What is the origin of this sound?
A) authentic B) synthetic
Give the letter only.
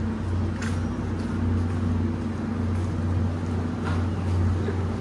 A